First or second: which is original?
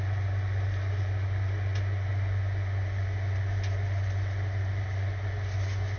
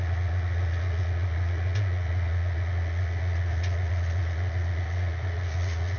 first